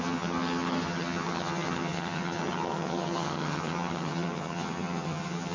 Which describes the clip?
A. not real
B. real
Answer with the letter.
A